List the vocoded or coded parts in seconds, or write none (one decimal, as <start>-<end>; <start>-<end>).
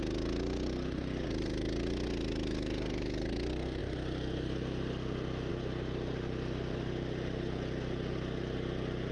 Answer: none